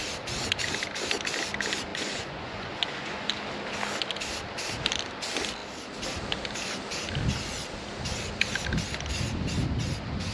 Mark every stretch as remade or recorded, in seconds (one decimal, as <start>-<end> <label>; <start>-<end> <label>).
0.0-1.9 recorded; 1.9-3.3 remade; 3.3-10.3 recorded